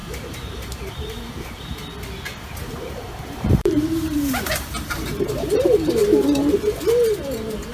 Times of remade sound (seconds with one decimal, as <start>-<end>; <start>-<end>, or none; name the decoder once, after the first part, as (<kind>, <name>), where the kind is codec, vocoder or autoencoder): 0.0-1.8 (vocoder, BigVGAN v2); 2.6-7.7